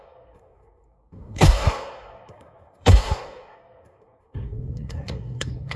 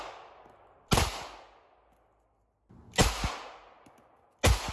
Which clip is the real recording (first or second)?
second